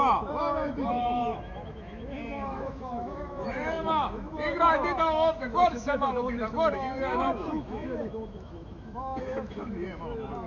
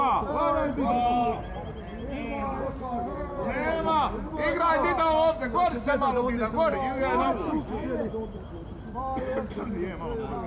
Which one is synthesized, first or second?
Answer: first